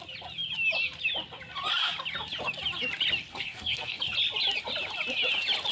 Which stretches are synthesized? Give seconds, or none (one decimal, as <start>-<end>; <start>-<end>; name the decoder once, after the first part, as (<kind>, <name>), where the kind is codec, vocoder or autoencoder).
3.3-4.0 (codec, SNAC)

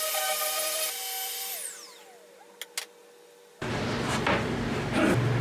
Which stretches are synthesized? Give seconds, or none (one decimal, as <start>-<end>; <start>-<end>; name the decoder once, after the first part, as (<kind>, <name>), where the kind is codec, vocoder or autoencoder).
none